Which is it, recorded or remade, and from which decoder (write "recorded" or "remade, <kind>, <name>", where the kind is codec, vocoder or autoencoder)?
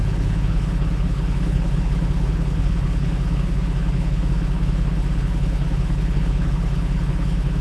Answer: remade, codec, HILCodec